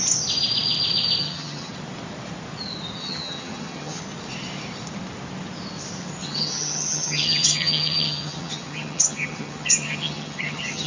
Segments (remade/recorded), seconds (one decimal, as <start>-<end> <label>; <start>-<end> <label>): 0.0-1.2 recorded; 1.2-1.7 remade; 1.7-3.0 recorded; 3.0-4.0 remade; 4.0-6.2 recorded; 6.2-10.9 remade